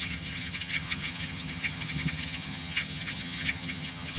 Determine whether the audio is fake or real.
fake